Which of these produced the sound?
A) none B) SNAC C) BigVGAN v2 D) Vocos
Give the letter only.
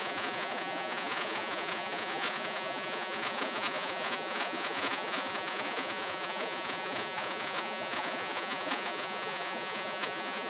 D